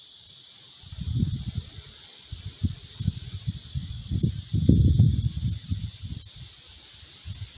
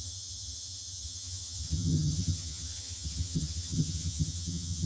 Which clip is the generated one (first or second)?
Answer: second